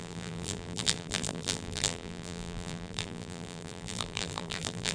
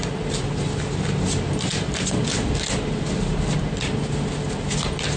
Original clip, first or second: second